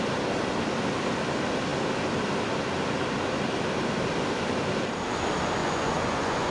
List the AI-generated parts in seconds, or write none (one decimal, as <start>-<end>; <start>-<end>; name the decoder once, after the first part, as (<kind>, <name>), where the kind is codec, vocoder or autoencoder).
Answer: 5.6-6.5 (vocoder, Vocos)